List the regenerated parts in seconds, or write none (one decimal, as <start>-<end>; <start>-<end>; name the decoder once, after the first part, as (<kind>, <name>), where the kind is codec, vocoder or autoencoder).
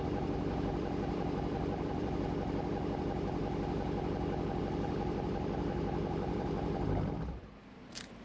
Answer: 0.0-3.4 (vocoder, BigVGAN v2); 4.6-8.2